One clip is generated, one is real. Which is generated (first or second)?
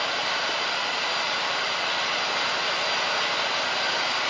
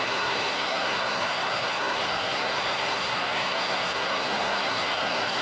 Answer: second